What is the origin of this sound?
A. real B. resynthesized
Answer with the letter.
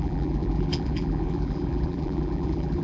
B